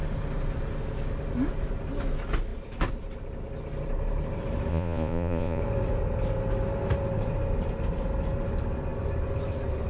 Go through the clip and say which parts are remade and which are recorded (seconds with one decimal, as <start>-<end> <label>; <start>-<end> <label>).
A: 0.0-4.7 recorded; 4.7-5.6 remade; 5.6-9.9 recorded